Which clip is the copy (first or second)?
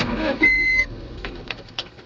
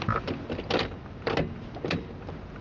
first